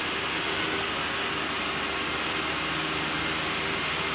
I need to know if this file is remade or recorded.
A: recorded